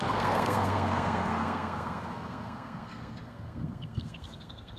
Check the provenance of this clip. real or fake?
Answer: fake